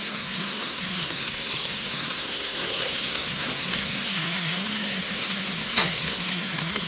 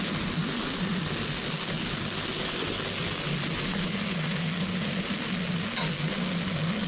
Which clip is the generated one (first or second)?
first